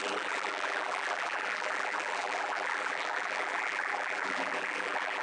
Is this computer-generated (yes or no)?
yes